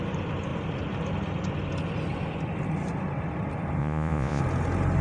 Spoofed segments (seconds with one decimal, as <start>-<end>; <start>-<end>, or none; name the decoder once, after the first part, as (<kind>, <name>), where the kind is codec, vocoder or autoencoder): 3.8-4.4 (vocoder, Vocos)